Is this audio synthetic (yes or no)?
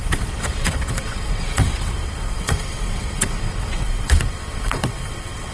yes